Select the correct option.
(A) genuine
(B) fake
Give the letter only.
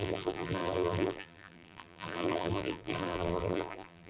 B